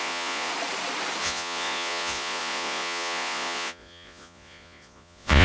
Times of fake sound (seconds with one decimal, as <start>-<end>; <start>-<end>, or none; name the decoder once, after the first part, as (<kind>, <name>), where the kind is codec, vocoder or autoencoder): 0.0-0.5 (vocoder, Vocos); 1.2-5.4

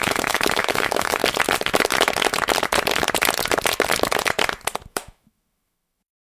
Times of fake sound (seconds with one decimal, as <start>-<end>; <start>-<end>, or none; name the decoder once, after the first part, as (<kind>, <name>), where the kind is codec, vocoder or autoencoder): 0.0-1.2 (autoencoder, DAC-VAE); 4.9-6.2